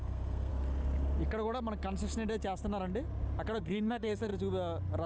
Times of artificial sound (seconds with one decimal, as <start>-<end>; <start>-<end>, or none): 0.0-0.5; 3.6-4.3